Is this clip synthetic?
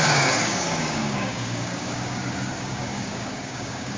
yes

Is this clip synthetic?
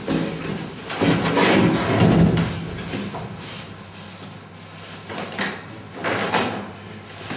no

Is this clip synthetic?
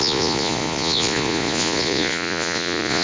yes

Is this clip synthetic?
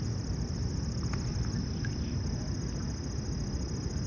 no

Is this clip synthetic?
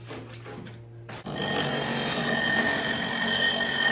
no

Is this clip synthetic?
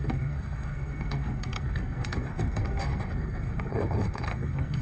yes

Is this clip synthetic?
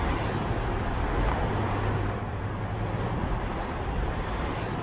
yes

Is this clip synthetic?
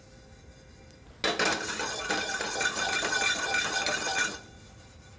no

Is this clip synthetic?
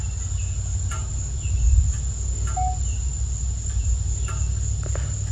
no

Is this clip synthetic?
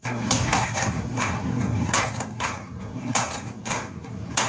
yes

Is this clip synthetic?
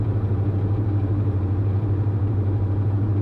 yes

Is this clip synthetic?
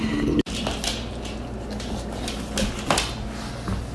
no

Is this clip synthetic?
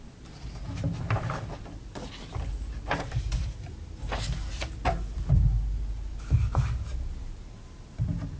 no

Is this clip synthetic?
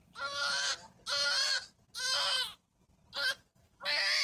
no